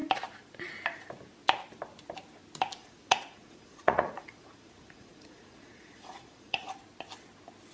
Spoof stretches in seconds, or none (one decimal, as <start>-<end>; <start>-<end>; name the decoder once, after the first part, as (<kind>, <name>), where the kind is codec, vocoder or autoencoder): 2.8-6.7 (vocoder, Vocos)